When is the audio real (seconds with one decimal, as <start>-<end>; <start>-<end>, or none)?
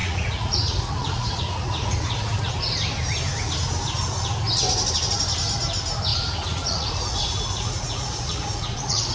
2.4-6.1